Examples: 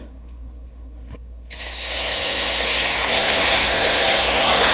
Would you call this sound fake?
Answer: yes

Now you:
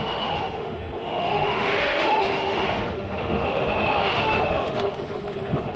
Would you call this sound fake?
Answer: yes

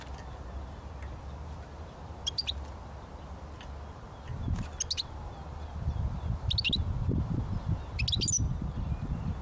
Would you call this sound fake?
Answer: no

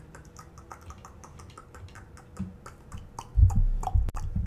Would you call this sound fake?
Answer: no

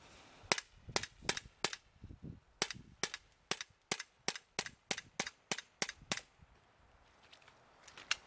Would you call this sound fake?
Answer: no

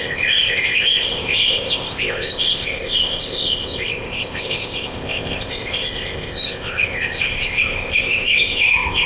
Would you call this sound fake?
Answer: yes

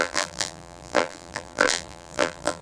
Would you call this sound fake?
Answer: yes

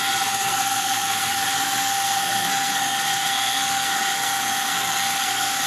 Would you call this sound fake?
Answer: yes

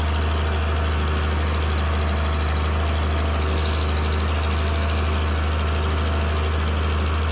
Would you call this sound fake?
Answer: no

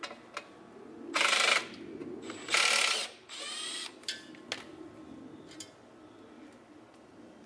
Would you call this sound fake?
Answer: no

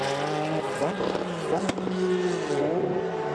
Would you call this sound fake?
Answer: no